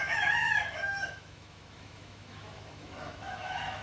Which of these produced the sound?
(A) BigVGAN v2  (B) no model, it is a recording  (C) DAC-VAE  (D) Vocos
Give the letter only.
C